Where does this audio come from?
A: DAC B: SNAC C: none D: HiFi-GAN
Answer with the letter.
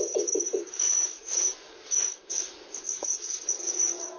A